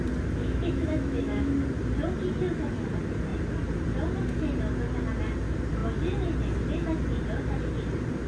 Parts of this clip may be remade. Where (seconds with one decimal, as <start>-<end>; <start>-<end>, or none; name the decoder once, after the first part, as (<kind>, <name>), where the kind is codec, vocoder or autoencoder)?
0.4-1.5 (autoencoder, DAC-VAE)